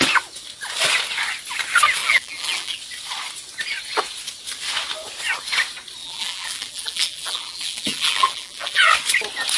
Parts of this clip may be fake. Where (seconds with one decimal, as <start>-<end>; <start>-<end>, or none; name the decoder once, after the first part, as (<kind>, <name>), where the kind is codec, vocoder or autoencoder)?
2.0-2.8 (vocoder, BigVGAN v2); 6.0-8.9